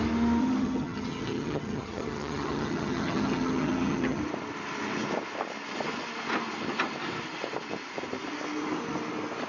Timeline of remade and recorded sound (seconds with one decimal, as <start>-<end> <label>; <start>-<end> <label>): 0.0-0.4 recorded; 0.4-4.2 remade; 4.2-9.5 recorded